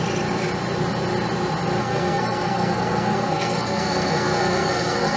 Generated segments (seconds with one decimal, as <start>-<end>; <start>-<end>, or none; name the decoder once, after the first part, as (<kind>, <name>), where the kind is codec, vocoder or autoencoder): 1.8-5.2 (codec, SNAC)